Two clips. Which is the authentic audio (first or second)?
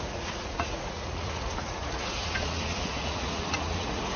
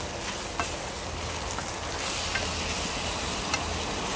second